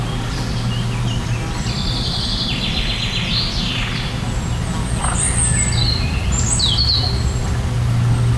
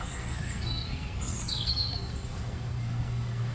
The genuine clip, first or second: first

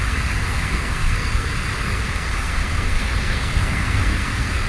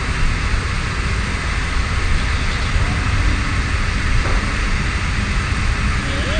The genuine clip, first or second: second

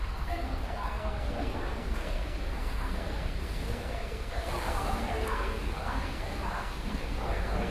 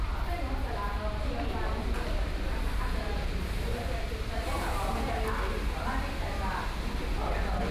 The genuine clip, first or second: second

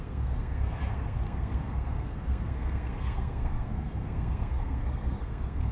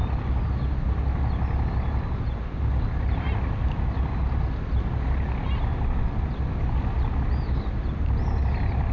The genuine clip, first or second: second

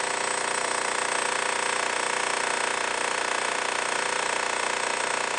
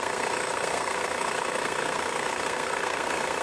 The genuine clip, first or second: first